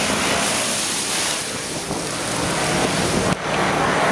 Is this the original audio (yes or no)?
yes